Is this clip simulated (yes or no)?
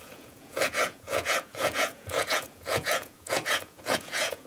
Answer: yes